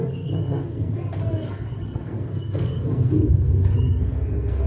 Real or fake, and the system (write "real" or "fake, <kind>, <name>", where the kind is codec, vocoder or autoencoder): fake, codec, SNAC